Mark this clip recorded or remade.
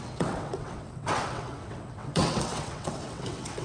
remade